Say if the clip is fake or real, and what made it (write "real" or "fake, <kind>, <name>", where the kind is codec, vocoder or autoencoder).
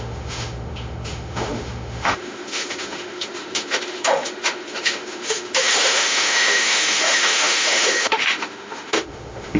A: fake, autoencoder, DAC-VAE